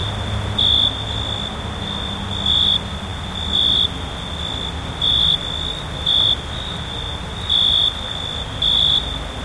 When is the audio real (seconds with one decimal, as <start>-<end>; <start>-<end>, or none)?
0.0-9.4